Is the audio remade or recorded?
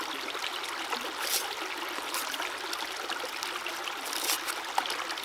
recorded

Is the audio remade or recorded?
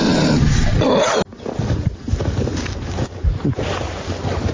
recorded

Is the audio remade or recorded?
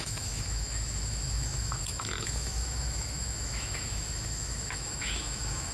remade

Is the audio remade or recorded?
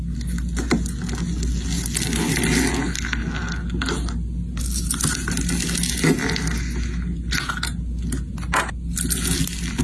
recorded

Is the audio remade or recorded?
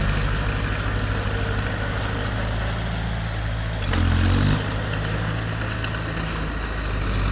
recorded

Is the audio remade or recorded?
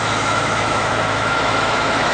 remade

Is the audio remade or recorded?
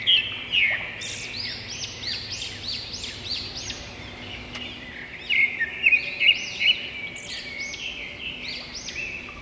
recorded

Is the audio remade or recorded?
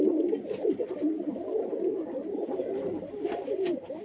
remade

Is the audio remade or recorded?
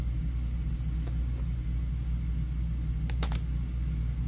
recorded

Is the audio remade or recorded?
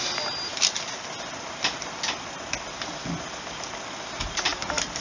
recorded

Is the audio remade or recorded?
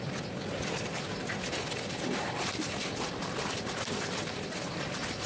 remade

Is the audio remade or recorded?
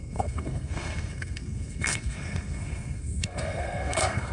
remade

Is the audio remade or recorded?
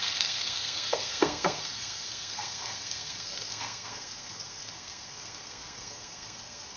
remade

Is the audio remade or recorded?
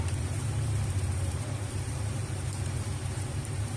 remade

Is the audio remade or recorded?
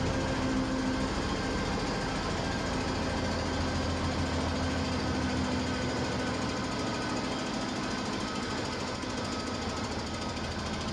recorded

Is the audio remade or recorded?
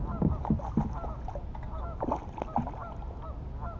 recorded